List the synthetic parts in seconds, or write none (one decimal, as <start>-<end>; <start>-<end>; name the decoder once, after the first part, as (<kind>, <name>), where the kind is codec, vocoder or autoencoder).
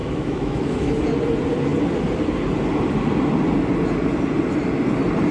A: 0.0-0.9 (autoencoder, DAC-VAE)